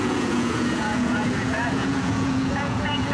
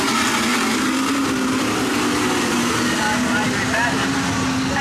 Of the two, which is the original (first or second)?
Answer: second